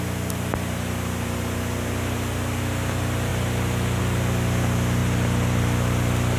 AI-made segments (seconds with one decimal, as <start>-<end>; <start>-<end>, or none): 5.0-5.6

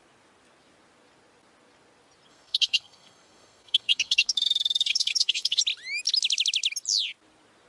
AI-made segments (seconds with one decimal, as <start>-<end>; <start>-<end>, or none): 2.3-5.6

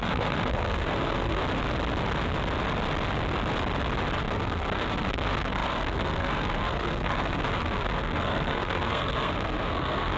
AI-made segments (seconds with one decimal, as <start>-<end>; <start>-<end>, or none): 0.0-1.4; 4.2-10.2

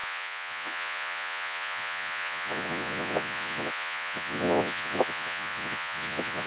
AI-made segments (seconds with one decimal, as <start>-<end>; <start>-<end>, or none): 0.0-6.5

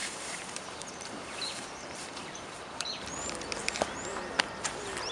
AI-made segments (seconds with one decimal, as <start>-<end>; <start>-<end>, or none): 0.0-3.1; 3.6-4.2